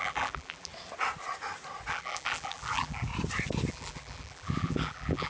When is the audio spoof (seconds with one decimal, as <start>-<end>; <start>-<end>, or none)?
0.0-0.7; 1.9-3.1; 3.7-5.3